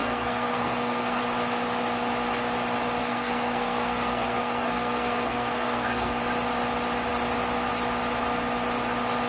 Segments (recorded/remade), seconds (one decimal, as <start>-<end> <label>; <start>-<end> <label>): 0.0-1.2 remade; 1.2-3.0 recorded; 3.0-6.2 remade; 6.2-9.3 recorded